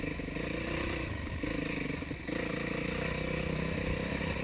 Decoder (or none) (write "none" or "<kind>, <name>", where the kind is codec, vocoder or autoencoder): none